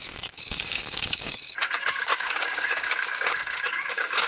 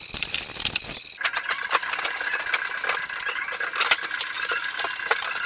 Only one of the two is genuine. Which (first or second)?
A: second